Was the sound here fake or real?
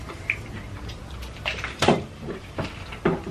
fake